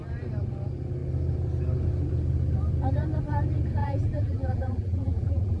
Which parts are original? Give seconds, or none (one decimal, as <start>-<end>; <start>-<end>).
0.0-3.8